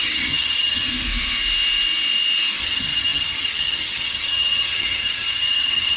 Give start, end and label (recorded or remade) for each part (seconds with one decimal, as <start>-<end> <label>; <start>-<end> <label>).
0.0-0.9 remade; 0.9-2.6 recorded; 2.6-6.0 remade